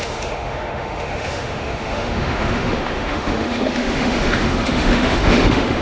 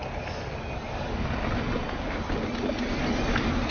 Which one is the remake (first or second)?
first